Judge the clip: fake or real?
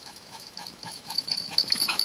fake